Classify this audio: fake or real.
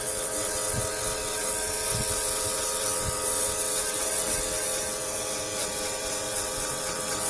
fake